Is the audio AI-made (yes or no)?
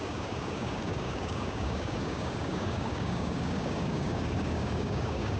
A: yes